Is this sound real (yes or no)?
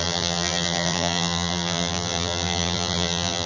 no